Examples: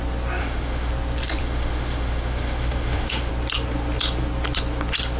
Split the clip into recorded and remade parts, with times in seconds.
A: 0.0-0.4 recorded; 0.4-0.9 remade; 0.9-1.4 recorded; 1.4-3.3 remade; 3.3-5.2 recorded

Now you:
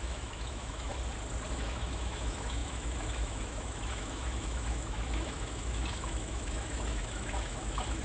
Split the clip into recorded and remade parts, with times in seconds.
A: 0.0-0.9 remade; 0.9-1.5 recorded; 1.5-8.0 remade